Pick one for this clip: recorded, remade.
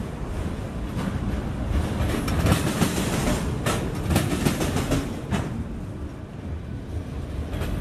recorded